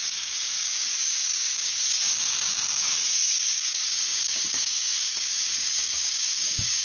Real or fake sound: fake